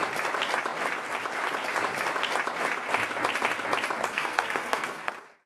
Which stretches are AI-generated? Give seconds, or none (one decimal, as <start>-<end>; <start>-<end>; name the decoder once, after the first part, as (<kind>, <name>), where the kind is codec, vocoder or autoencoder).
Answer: 4.1-5.1 (codec, SNAC)